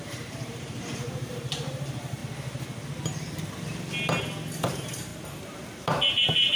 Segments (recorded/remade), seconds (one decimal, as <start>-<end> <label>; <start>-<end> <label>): 0.0-2.2 remade; 2.2-4.6 recorded; 4.6-5.1 remade; 5.1-6.1 recorded; 6.1-6.6 remade